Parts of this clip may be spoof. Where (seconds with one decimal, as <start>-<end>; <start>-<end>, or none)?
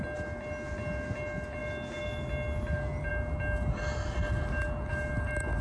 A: none